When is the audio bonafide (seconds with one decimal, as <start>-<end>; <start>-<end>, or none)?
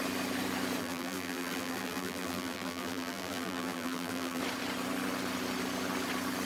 0.0-0.8; 4.4-6.5